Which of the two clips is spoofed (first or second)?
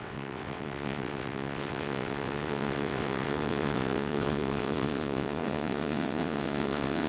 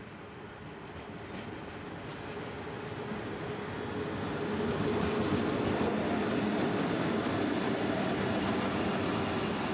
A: first